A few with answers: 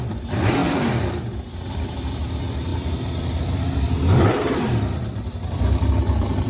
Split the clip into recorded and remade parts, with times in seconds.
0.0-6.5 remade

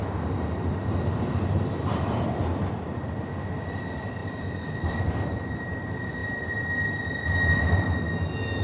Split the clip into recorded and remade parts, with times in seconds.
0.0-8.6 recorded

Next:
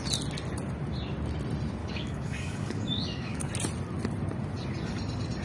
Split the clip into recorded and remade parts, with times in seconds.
0.0-1.8 recorded; 1.8-3.5 remade; 3.5-5.4 recorded